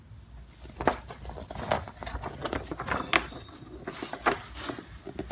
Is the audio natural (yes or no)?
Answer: yes